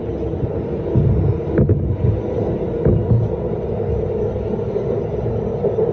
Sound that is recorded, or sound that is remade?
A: recorded